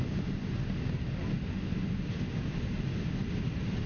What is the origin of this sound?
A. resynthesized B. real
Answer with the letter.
B